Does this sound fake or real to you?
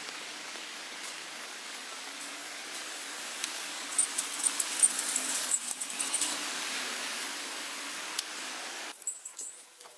fake